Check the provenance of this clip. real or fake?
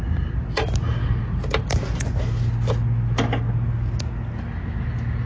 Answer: real